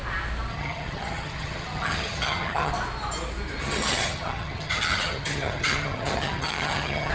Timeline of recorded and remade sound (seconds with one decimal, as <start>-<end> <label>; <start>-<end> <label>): 0.0-0.5 recorded; 0.5-2.7 remade; 2.7-3.6 recorded; 3.6-7.1 remade